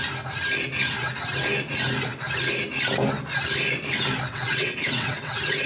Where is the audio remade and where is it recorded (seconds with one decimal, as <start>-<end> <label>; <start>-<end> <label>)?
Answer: 0.0-4.3 recorded; 4.3-5.7 remade